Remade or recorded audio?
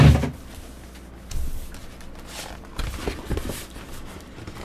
recorded